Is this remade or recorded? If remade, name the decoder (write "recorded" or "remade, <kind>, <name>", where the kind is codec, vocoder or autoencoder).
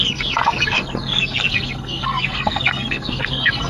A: remade, codec, SNAC